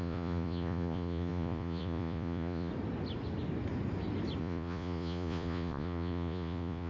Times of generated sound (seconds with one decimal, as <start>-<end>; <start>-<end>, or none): 0.0-2.7; 4.4-6.9